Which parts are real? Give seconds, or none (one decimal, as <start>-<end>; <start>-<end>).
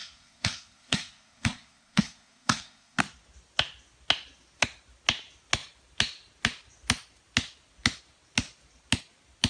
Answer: 3.0-9.5